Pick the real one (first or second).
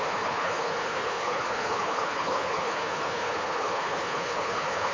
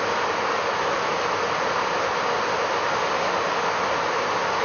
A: second